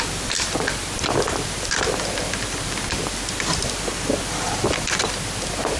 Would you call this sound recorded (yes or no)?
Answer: no